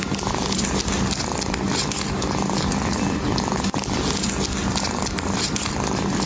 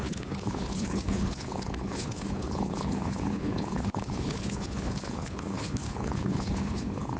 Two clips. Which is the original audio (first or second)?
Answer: first